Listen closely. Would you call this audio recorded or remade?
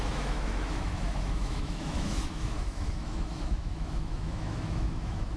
remade